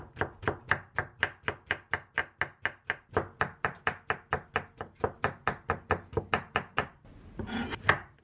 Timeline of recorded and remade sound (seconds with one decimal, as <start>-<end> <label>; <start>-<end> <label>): 0.0-8.2 recorded